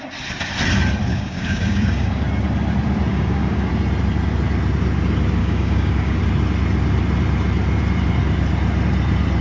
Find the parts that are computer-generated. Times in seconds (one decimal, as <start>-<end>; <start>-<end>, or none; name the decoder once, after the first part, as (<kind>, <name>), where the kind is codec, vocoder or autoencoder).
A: 1.1-2.2 (codec, DAC); 3.1-3.7; 5.4-6.2